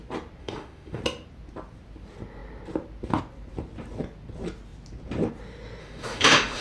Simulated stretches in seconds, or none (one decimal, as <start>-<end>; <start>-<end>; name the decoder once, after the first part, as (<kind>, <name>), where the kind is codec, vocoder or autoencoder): 0.4-1.0 (autoencoder, DAC-VAE); 5.8-6.6

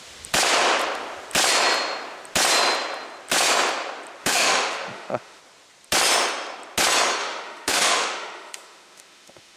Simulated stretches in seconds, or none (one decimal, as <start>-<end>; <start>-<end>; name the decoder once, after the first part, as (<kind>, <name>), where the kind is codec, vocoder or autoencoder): 4.2-5.4 (autoencoder, DAC-VAE); 7.2-9.6

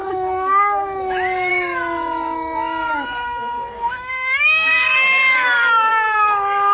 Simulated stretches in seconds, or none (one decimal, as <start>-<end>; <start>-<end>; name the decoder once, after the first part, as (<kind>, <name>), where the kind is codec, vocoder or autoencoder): 0.0-6.7 (autoencoder, DAC-VAE)

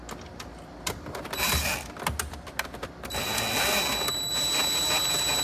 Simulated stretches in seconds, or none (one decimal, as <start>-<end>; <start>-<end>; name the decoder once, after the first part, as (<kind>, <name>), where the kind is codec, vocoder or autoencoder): none

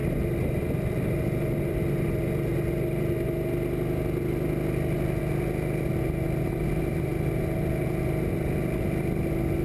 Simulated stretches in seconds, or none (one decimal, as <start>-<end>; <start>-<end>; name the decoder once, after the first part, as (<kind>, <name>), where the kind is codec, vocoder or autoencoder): none

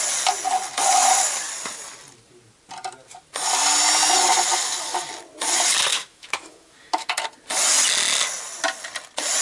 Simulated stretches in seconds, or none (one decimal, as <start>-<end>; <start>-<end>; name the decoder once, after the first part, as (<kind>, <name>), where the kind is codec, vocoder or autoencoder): 5.9-7.1 (autoencoder, DAC-VAE)